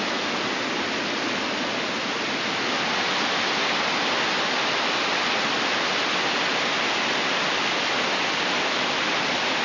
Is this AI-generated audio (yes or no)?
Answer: no